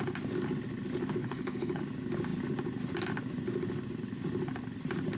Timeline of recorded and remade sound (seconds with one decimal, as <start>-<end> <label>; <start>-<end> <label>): 0.0-1.2 recorded; 1.2-1.8 remade; 1.8-5.2 recorded